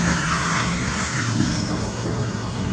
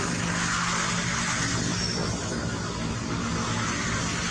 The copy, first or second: first